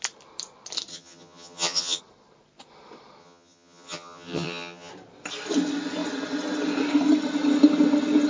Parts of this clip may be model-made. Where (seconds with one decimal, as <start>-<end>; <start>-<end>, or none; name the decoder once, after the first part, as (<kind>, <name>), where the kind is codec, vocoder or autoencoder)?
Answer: 0.9-2.0 (vocoder, HiFi-GAN); 3.2-4.9

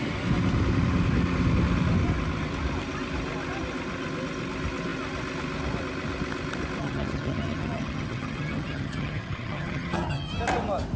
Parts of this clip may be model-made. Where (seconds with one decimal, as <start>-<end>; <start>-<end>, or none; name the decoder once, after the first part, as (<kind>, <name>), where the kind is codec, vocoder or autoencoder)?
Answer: 6.8-10.3 (vocoder, HiFi-GAN)

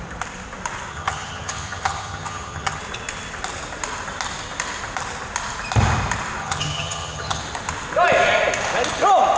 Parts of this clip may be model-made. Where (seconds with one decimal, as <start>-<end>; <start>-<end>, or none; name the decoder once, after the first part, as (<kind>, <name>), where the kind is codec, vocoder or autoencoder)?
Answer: 0.9-2.8 (vocoder, HiFi-GAN); 6.4-7.4